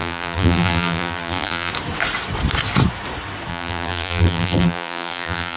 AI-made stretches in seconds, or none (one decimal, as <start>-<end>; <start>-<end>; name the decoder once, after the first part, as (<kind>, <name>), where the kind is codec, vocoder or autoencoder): 0.0-1.7 (vocoder, BigVGAN v2); 3.5-5.6